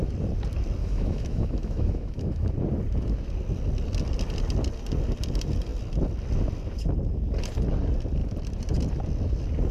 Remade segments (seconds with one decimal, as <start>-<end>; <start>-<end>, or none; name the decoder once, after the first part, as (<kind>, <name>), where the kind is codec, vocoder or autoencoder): 0.8-2.5 (autoencoder, DAC-VAE)